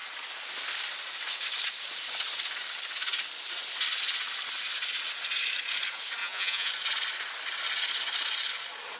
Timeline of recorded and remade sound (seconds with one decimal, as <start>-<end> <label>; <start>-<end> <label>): 0.0-6.2 recorded; 6.2-6.7 remade; 6.7-9.0 recorded